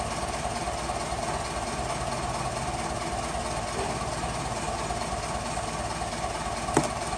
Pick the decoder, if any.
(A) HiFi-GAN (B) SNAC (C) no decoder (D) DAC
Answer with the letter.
C